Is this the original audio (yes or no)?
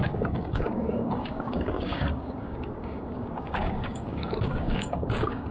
no